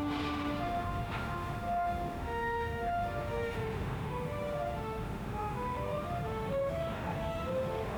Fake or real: fake